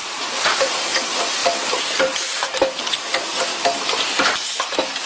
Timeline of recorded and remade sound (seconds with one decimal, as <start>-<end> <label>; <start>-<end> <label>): 0.0-0.7 remade; 0.7-1.4 recorded; 1.4-2.9 remade; 2.9-5.1 recorded